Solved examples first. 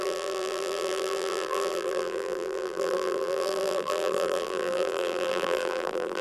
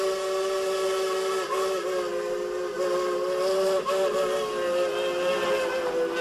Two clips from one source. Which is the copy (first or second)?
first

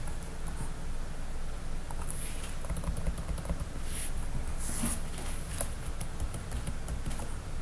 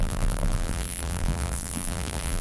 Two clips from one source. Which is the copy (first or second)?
second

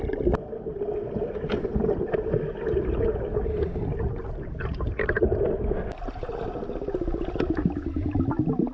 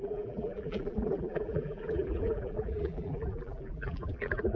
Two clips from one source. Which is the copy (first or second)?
second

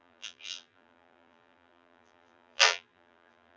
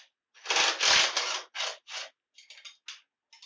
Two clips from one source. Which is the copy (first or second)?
first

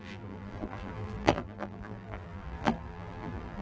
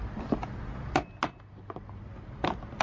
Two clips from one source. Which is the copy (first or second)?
first